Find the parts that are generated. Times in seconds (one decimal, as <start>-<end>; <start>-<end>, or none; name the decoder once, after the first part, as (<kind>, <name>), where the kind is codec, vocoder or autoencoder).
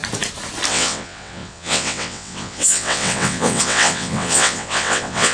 0.7-5.3 (vocoder, WaveNeXt)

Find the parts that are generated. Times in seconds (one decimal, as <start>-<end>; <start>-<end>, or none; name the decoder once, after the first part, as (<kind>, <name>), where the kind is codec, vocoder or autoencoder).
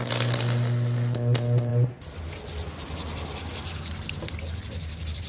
none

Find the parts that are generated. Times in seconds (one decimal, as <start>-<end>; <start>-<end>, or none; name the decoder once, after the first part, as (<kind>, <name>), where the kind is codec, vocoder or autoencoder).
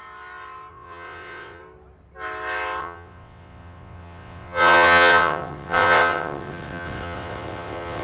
0.7-1.6 (vocoder, WaveNeXt); 2.8-8.0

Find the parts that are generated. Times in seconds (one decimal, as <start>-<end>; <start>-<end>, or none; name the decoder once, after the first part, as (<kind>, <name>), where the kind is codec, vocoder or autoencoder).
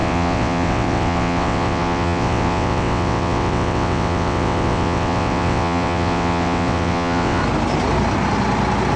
0.0-7.4 (vocoder, WaveNeXt)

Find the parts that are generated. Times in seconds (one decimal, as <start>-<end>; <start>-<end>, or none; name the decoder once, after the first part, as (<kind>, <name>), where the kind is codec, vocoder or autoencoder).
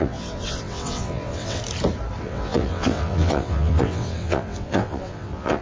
0.0-1.6 (vocoder, WaveNeXt); 2.2-5.6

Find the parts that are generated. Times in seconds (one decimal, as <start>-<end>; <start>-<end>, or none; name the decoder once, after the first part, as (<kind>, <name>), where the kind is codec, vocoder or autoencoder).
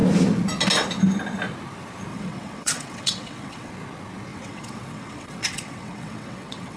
2.1-3.7 (vocoder, WaveNeXt); 4.3-6.8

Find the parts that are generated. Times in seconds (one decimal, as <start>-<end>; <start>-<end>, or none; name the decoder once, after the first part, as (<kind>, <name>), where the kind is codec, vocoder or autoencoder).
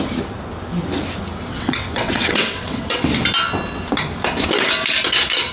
1.5-3.0 (vocoder, WaveNeXt)